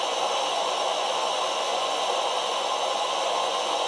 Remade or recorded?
remade